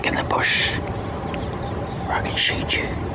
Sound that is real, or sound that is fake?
fake